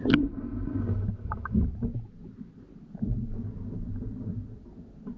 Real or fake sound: real